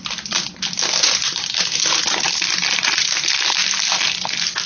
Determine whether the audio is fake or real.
real